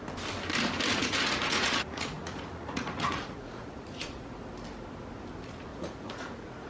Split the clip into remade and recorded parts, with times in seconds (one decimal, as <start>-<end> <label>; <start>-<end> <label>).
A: 0.0-0.9 recorded; 0.9-4.3 remade; 4.3-5.7 recorded; 5.7-6.7 remade